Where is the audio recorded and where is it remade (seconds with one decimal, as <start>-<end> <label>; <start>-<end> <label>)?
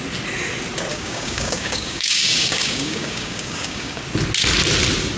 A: 0.0-0.9 recorded; 0.9-4.0 remade; 4.0-5.2 recorded